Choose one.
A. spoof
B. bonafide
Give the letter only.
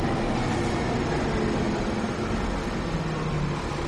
B